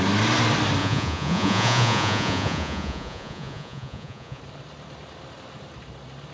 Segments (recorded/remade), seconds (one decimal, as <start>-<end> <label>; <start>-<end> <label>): 0.0-0.8 recorded; 0.8-4.4 remade; 4.4-6.3 recorded